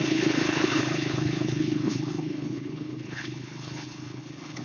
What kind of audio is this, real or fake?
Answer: fake